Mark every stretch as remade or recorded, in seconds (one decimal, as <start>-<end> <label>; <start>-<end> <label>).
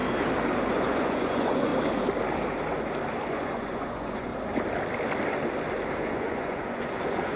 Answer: 0.0-0.7 recorded; 0.7-1.7 remade; 1.7-3.3 recorded; 3.3-4.3 remade; 4.3-6.0 recorded; 6.0-7.4 remade